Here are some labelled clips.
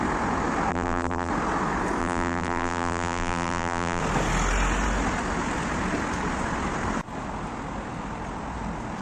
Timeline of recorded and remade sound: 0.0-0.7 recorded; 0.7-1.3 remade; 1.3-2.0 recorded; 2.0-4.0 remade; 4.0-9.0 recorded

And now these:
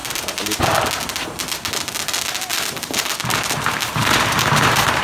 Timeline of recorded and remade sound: 0.0-0.6 remade; 0.6-2.5 recorded; 2.5-5.0 remade

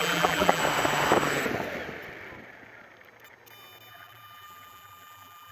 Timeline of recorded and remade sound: 0.0-0.6 remade; 0.6-3.9 recorded; 3.9-5.5 remade

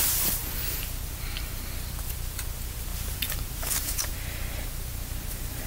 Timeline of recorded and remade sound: 0.0-2.9 recorded; 2.9-4.1 remade; 4.1-5.7 recorded

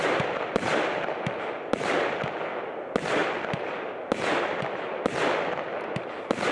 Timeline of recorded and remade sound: 0.0-6.5 recorded